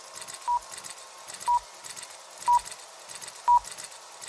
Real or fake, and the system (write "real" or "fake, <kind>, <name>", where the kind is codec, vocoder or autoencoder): real